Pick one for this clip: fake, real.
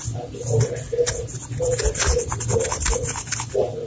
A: real